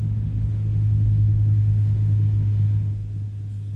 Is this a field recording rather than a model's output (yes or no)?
no